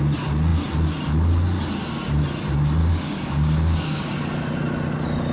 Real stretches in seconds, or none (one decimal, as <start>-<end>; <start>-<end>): 0.0-2.8; 4.1-5.3